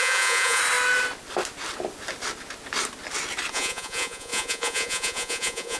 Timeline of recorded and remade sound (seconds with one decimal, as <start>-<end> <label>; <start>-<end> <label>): 0.0-0.6 remade; 0.6-3.5 recorded; 3.5-5.8 remade